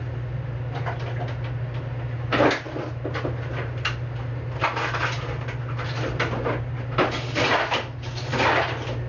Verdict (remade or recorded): recorded